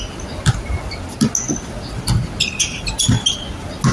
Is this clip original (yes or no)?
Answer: yes